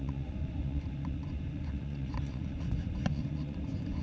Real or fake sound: fake